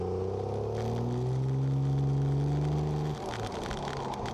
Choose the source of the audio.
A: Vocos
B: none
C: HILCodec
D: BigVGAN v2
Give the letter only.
B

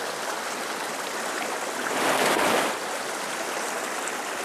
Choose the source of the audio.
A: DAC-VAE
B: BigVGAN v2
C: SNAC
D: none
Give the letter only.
D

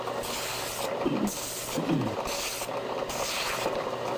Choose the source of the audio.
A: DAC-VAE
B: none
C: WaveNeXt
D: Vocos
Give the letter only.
B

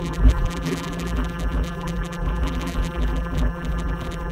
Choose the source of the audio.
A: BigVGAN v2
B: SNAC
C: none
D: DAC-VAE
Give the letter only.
A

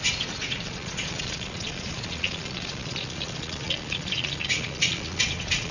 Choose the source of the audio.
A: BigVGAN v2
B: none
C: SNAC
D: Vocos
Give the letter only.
D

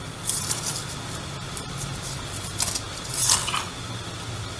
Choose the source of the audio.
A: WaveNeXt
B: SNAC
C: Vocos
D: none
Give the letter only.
D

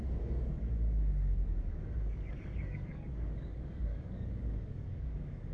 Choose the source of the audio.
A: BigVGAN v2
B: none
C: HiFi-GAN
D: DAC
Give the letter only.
D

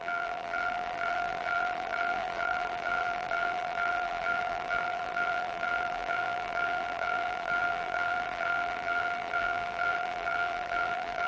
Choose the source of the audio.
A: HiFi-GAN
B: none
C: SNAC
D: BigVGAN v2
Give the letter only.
D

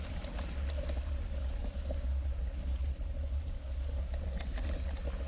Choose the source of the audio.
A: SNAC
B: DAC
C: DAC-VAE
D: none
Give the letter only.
D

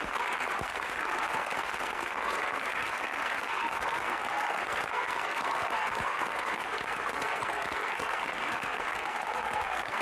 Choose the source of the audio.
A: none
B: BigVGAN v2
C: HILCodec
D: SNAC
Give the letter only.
D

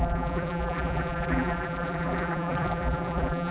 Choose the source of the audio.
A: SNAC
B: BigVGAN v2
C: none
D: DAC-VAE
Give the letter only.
B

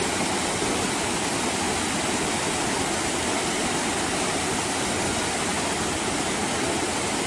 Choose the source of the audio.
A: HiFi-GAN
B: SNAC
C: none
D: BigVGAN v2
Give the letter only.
C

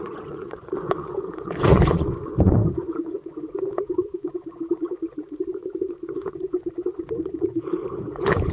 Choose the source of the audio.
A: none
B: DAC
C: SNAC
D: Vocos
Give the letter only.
D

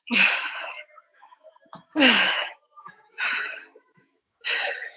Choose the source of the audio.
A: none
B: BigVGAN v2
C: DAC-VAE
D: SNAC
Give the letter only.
C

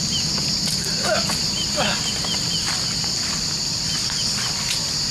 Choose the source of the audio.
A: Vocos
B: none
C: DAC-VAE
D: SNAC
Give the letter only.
B